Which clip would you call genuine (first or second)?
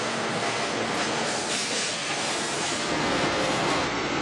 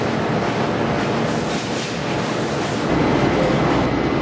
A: second